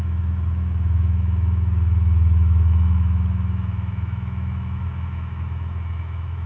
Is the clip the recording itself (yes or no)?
no